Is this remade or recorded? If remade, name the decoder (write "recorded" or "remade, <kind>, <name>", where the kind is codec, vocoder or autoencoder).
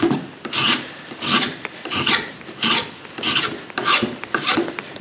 recorded